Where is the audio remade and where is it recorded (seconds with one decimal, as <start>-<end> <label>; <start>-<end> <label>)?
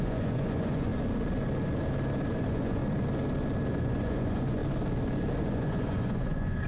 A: 0.0-0.9 remade; 0.9-2.4 recorded; 2.4-2.8 remade; 2.8-3.7 recorded; 3.7-4.6 remade; 4.6-5.4 recorded; 5.4-6.7 remade